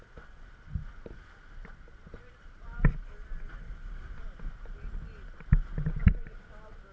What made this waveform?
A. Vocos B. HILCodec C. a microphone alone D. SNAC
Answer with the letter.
C